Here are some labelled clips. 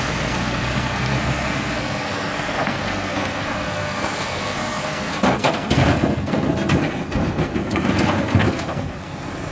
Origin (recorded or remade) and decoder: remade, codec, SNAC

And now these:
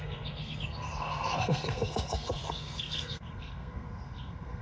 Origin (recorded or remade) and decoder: remade, codec, SNAC